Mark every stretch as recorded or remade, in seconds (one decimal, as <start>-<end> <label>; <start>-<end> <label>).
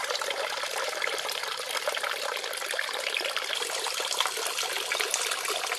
0.0-5.8 recorded